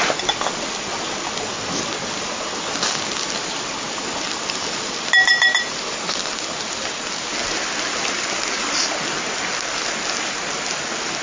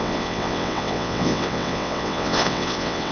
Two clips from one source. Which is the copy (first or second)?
second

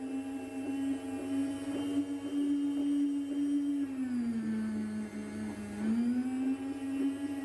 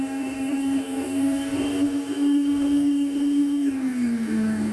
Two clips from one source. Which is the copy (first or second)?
second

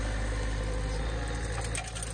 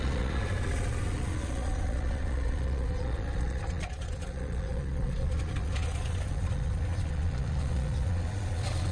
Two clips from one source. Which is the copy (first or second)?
second